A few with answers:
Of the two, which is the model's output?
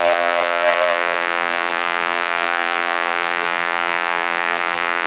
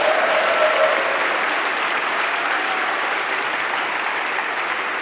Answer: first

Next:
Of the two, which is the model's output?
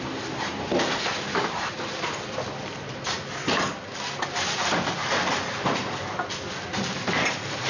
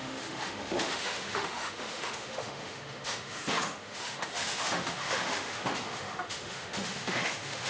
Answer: second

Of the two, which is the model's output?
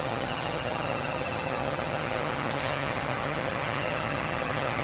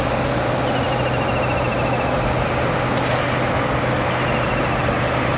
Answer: first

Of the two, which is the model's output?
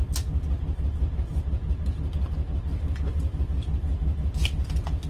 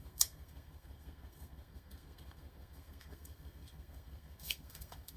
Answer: second